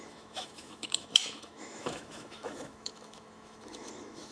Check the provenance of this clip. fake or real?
fake